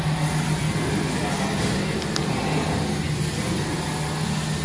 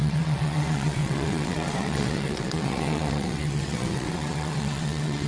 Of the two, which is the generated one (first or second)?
second